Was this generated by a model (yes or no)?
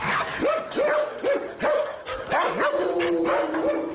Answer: no